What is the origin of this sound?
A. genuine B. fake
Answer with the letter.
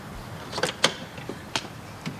B